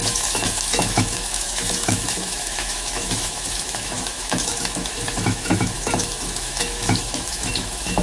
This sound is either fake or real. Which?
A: fake